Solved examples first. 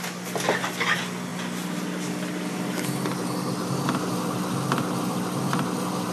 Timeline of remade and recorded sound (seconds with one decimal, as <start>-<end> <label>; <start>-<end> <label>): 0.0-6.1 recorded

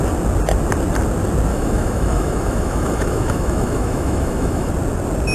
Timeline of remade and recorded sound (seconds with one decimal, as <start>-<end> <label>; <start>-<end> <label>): 0.0-1.5 recorded; 1.5-4.7 remade; 4.7-5.3 recorded

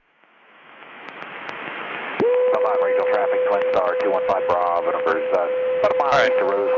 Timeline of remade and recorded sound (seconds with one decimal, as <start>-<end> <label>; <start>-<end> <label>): 0.0-3.2 remade; 3.2-3.7 recorded; 3.7-6.8 remade